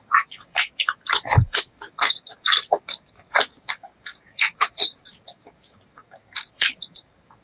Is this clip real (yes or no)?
no